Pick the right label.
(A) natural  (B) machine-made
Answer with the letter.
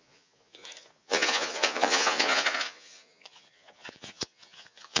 B